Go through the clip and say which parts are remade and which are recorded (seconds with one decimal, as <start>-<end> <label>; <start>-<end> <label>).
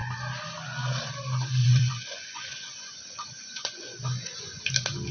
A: 0.0-1.6 recorded; 1.6-4.6 remade; 4.6-5.1 recorded